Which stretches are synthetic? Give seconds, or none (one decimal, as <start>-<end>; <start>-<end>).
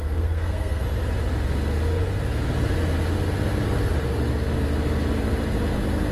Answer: 0.0-0.8